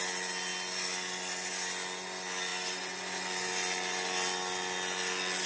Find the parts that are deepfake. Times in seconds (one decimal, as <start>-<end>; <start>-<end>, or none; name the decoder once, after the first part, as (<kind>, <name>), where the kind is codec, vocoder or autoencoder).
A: none